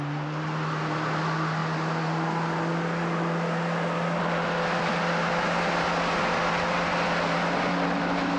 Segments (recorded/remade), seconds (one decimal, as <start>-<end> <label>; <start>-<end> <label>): 0.0-8.4 recorded